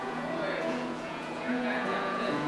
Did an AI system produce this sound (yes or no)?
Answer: yes